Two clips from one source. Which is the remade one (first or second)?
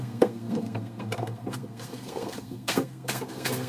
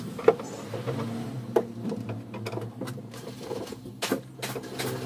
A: first